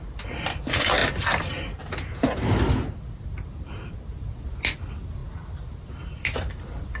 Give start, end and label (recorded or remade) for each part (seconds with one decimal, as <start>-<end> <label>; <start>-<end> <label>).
0.0-7.0 recorded